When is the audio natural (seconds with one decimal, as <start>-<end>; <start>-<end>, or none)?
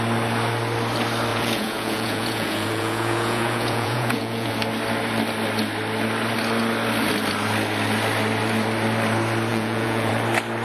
0.0-1.3; 4.5-9.5; 10.1-10.6